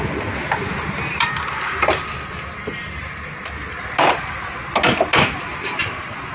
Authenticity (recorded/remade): recorded